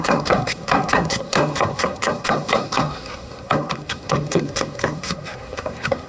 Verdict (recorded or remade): remade